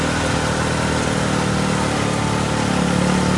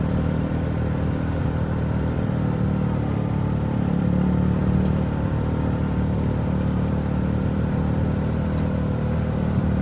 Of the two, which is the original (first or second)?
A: first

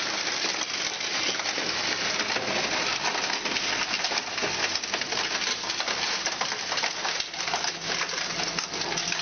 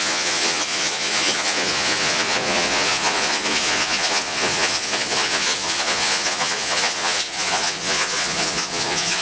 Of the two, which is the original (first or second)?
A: first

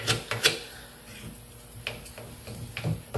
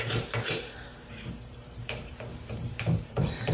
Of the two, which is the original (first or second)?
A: first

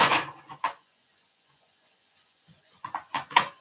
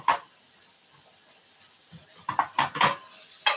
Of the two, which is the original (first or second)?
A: second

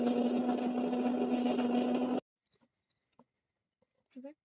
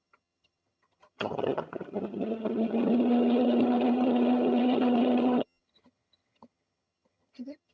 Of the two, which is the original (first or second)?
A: first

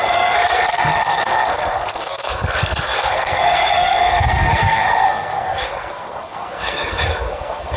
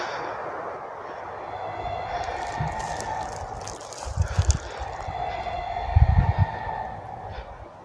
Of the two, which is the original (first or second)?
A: second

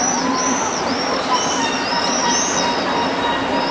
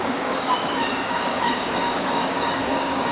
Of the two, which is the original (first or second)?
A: first